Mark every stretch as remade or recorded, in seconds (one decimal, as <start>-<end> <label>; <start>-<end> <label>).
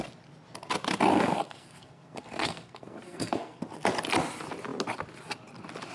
0.0-1.1 recorded; 1.1-3.6 remade; 3.6-5.9 recorded